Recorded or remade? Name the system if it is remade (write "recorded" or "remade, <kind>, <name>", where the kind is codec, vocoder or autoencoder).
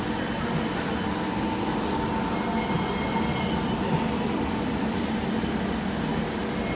recorded